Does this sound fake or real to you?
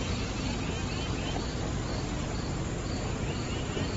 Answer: real